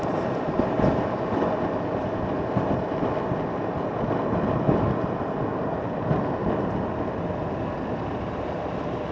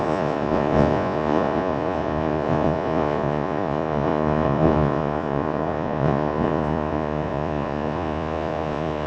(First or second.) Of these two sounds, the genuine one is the first